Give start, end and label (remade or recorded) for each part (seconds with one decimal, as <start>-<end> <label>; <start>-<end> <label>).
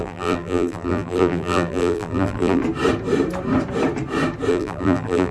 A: 0.0-2.6 remade; 2.6-4.5 recorded; 4.5-5.3 remade